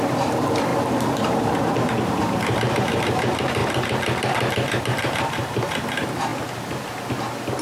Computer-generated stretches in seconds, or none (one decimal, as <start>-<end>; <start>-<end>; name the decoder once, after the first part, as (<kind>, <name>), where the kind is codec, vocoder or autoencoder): 0.0-3.6 (vocoder, BigVGAN v2); 4.8-6.3